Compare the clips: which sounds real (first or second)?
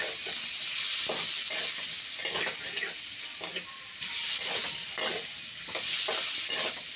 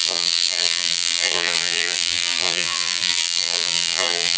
first